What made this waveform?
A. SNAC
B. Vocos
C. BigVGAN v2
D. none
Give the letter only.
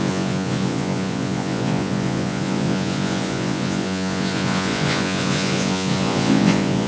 B